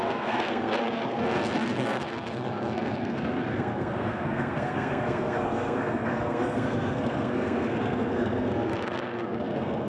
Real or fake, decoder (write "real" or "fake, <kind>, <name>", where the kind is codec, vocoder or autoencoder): fake, codec, SNAC